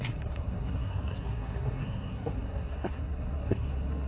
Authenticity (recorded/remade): remade